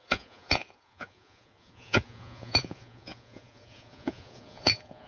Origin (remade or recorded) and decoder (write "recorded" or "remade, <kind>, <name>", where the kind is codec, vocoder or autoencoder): remade, vocoder, Vocos